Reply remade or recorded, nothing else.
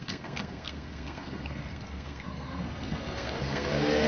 remade